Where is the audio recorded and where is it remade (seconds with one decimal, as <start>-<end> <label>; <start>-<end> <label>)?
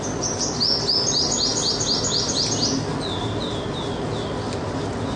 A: 0.0-5.2 recorded